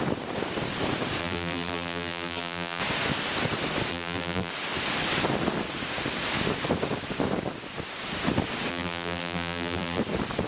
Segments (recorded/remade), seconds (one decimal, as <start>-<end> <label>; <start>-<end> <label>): 0.0-1.2 recorded; 1.2-2.8 remade; 2.8-3.9 recorded; 3.9-4.5 remade; 4.5-8.7 recorded; 8.7-10.0 remade; 10.0-10.5 recorded